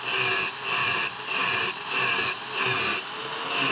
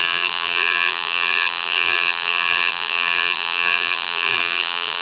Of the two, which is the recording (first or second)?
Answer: first